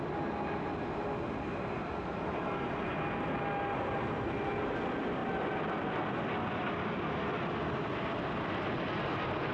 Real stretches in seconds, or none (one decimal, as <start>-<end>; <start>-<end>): 0.0-9.5